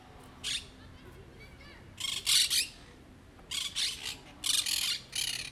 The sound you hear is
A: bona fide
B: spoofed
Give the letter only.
A